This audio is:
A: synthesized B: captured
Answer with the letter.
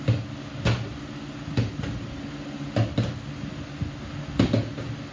B